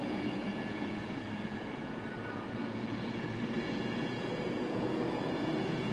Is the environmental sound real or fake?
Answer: fake